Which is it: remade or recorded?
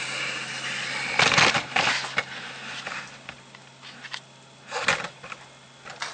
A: recorded